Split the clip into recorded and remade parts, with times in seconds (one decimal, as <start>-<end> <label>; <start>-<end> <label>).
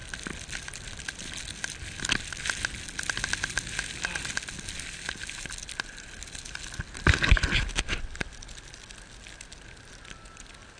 0.0-10.8 recorded